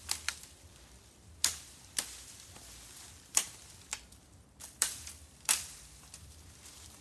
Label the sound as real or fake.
fake